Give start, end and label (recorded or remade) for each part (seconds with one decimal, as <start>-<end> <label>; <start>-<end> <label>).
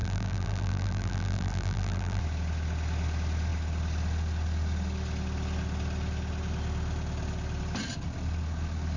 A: 0.0-2.2 remade; 2.2-9.0 recorded